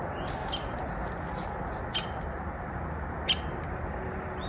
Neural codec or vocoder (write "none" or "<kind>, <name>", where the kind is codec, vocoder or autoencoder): none